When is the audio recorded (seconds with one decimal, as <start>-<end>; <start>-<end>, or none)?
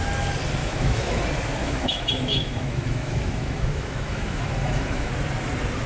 0.0-0.6; 1.2-1.6; 5.1-5.9